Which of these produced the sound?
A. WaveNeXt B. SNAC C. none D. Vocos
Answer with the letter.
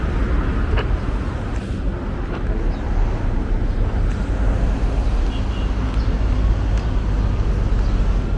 C